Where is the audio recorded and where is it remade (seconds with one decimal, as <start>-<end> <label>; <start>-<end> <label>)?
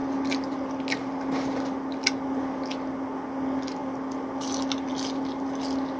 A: 0.0-6.0 recorded